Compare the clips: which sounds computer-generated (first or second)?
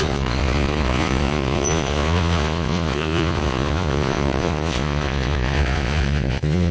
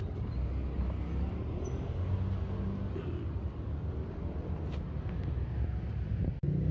first